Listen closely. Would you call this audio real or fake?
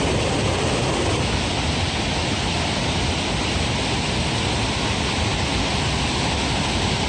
real